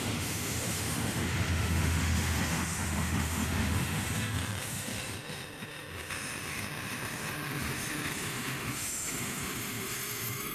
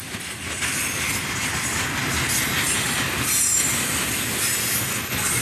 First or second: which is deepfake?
first